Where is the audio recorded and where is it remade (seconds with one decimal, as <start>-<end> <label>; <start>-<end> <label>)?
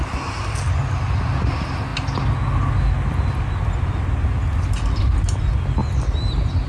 0.0-6.7 recorded